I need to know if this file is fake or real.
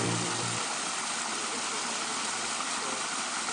real